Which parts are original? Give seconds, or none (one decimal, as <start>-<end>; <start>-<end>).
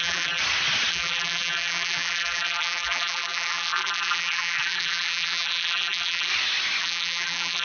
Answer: 0.4-0.9; 6.3-6.8